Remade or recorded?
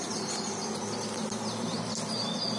recorded